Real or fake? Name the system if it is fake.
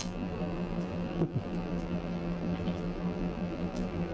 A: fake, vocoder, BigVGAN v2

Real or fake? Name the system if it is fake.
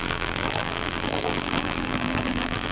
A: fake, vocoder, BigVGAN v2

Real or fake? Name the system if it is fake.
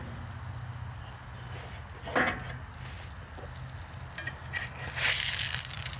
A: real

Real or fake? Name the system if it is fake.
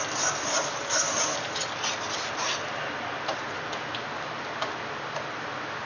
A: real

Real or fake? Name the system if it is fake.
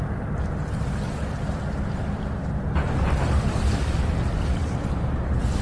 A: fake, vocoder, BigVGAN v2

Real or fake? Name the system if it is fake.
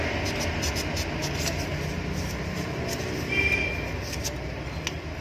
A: real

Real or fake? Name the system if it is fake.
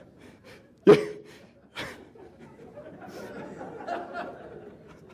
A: fake, vocoder, BigVGAN v2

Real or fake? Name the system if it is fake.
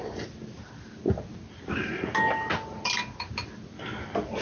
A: real